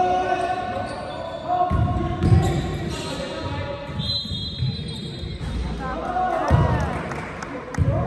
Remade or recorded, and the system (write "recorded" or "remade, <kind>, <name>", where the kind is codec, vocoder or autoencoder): recorded